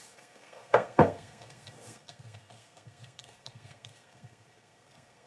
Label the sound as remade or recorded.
remade